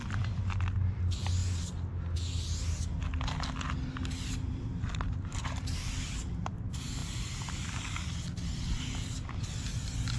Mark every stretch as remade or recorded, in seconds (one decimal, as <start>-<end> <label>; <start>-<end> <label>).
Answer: 0.0-1.4 remade; 1.4-4.3 recorded; 4.3-10.2 remade